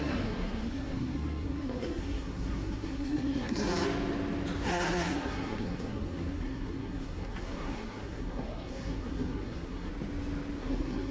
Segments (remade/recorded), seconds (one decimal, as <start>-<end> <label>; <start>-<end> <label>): 0.0-3.7 remade; 3.7-4.7 recorded; 4.7-9.9 remade; 9.9-10.6 recorded; 10.6-11.1 remade